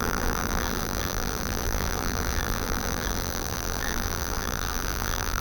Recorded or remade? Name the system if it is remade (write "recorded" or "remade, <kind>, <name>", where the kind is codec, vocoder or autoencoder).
remade, vocoder, BigVGAN v2